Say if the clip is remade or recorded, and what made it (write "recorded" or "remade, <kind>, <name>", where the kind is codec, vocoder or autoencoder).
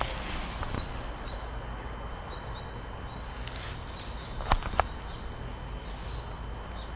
recorded